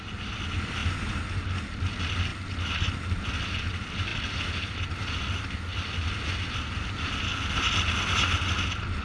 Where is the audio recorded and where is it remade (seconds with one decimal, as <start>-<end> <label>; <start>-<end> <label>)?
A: 0.0-9.0 recorded